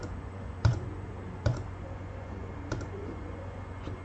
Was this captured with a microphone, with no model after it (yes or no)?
no